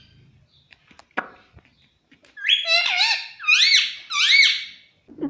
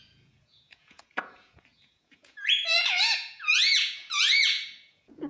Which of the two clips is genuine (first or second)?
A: first